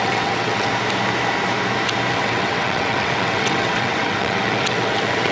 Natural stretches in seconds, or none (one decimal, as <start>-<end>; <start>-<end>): 0.7-2.1